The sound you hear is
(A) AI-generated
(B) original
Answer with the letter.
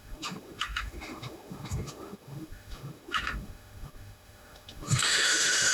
A